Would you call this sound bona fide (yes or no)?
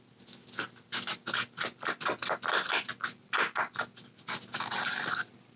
yes